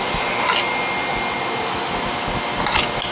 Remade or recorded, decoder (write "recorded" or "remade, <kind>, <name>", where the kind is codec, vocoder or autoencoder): recorded